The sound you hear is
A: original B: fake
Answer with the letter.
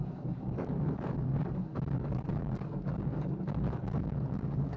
B